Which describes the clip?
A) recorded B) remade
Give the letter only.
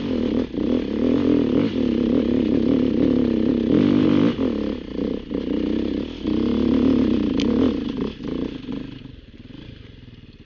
A